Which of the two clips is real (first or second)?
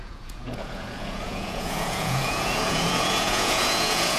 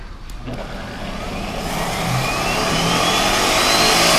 second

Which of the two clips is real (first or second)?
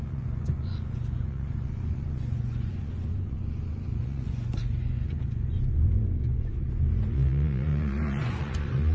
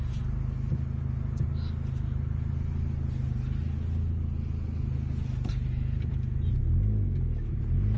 second